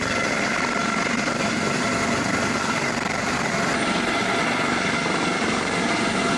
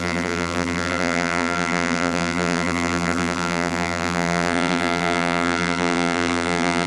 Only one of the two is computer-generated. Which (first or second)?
second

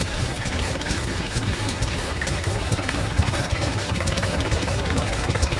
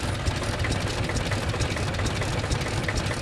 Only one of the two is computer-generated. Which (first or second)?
first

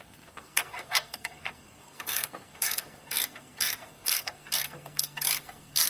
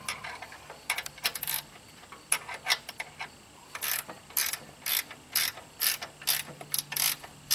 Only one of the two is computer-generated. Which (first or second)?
first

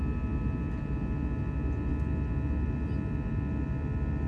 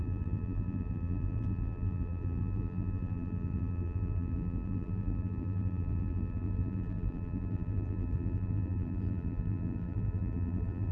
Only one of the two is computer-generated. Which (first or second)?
second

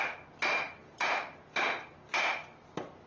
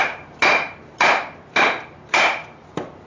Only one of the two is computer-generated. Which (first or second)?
second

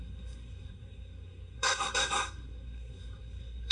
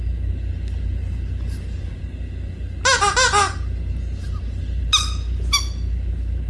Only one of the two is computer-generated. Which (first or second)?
first